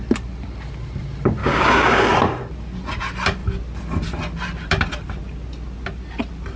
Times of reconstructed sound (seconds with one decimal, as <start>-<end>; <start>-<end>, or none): 1.4-2.1